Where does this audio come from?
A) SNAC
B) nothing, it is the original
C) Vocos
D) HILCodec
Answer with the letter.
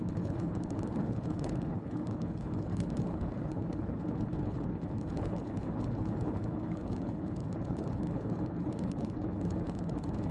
D